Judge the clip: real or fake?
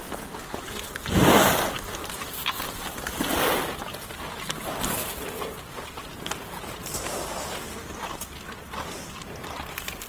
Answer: real